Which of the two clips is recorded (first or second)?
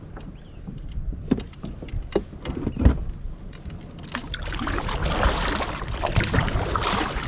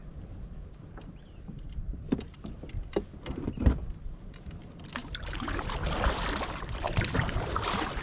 first